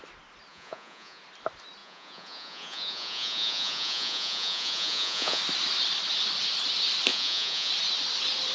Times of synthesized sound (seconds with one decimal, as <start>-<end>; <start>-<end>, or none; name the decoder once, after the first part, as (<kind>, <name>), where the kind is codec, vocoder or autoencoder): 0.5-1.2 (vocoder, Vocos); 1.8-5.4; 7.1-7.7